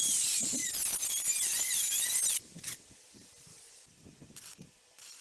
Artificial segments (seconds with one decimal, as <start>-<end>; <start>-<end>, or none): none